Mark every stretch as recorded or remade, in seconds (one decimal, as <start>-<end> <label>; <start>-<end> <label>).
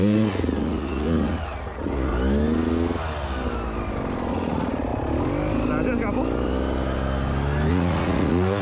0.0-2.1 remade; 2.1-4.3 recorded; 4.3-4.9 remade; 4.9-7.7 recorded; 7.7-8.6 remade